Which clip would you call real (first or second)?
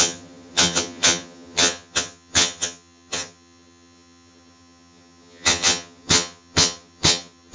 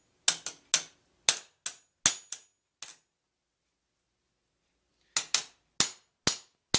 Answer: second